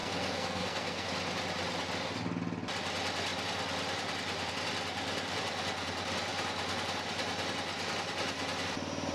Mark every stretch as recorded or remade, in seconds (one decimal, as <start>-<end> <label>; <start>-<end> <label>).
0.0-1.1 remade; 1.1-9.1 recorded